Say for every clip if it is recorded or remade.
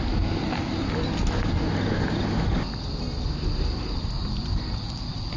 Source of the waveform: recorded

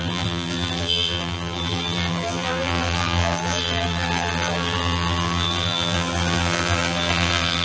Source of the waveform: remade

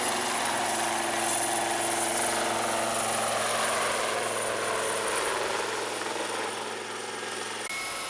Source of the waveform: recorded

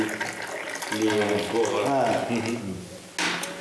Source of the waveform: recorded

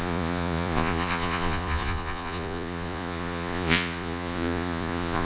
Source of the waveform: remade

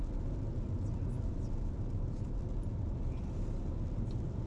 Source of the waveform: recorded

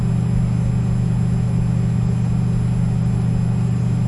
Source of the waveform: recorded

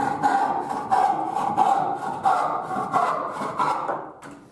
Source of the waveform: recorded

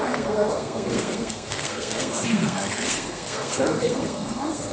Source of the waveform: remade